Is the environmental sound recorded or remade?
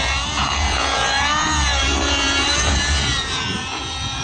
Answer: remade